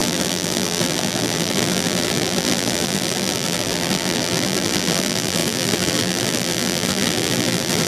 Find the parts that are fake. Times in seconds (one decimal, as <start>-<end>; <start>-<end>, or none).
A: 0.0-7.9